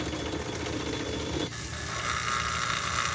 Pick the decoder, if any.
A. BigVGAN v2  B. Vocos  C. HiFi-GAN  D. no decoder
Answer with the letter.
D